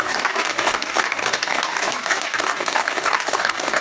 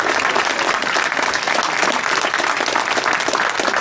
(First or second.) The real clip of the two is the second